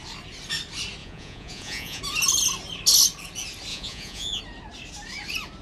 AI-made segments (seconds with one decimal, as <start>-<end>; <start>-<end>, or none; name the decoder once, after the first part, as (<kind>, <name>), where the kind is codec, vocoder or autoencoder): 1.0-2.0 (vocoder, Vocos); 3.7-4.4